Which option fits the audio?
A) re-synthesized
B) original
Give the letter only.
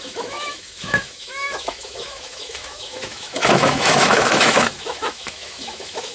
A